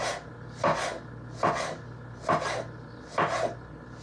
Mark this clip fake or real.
real